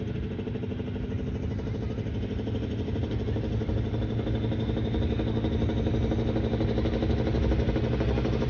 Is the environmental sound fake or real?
real